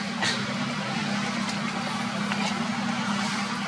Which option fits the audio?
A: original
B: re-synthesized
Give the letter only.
A